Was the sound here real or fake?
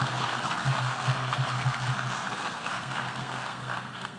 fake